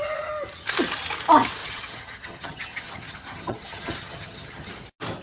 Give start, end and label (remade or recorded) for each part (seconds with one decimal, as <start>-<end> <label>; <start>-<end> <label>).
0.0-1.6 recorded; 1.6-4.7 remade; 4.7-5.2 recorded